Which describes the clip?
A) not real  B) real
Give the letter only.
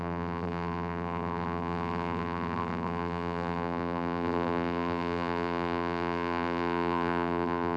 A